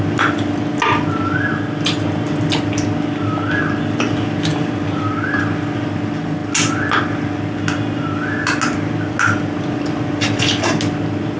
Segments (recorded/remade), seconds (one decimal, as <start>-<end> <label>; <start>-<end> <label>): 0.0-11.4 recorded